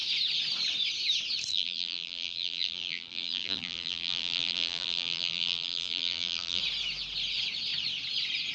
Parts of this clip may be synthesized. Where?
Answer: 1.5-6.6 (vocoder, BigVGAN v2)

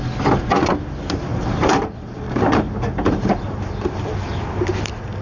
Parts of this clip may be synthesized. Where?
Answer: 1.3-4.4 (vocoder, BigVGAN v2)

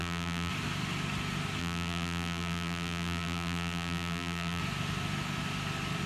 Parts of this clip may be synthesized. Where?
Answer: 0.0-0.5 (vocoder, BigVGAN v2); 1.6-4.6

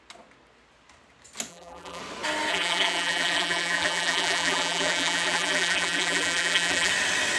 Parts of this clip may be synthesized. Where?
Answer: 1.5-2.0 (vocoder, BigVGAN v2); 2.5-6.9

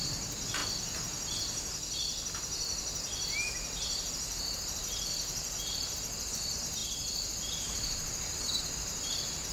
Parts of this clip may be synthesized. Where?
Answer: 0.0-0.6 (vocoder, BigVGAN v2); 4.1-9.5